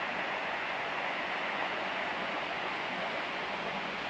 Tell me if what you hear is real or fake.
fake